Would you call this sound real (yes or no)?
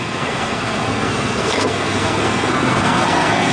no